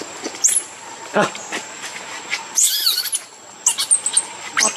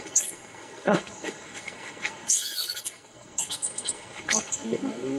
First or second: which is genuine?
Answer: first